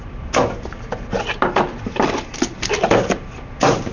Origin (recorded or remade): recorded